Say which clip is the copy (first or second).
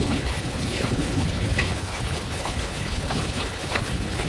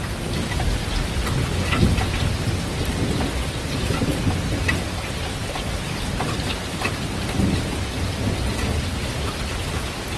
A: first